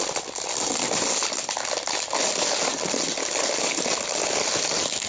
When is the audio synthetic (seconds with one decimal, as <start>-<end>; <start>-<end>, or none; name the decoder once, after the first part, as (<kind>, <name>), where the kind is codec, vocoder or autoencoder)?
none